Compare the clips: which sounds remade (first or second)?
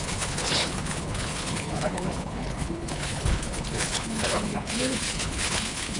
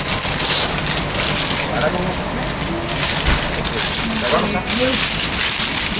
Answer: first